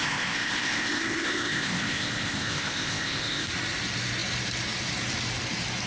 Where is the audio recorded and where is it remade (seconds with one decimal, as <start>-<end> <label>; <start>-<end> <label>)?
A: 0.0-3.5 remade; 3.5-5.9 recorded